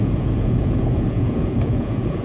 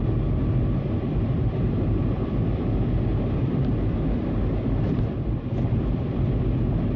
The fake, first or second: first